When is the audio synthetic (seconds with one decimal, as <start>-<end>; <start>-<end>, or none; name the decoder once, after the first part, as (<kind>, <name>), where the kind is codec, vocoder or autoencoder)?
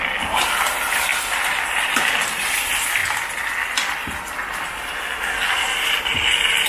1.1-1.9 (vocoder, BigVGAN v2)